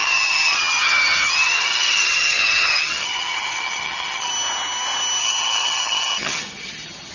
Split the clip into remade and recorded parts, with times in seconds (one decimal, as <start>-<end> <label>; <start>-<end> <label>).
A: 0.0-4.3 remade; 4.3-5.2 recorded; 5.2-7.1 remade